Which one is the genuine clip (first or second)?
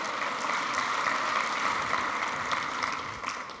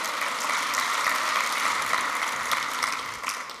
second